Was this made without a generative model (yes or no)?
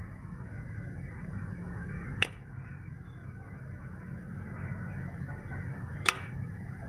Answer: no